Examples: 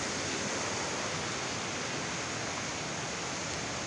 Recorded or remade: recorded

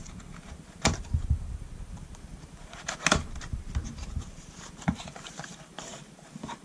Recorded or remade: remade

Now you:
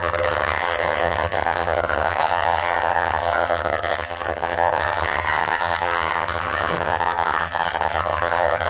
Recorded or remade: remade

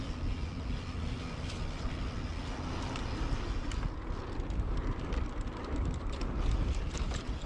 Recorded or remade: recorded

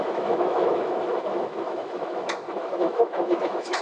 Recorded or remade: remade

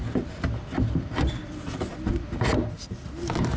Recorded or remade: recorded